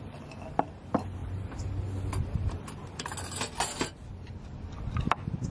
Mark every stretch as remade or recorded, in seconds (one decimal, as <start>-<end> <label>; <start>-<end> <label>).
0.0-5.5 recorded